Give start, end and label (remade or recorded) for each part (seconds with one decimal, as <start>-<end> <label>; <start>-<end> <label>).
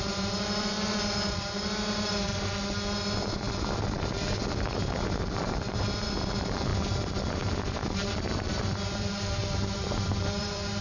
0.0-2.3 remade; 2.3-3.2 recorded; 3.2-10.8 remade